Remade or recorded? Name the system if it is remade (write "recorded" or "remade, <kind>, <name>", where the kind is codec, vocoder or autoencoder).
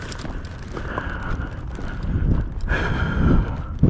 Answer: recorded